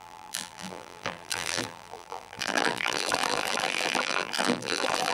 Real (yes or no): no